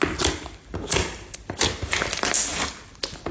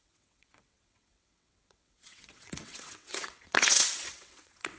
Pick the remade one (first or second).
second